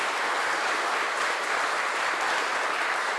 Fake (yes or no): no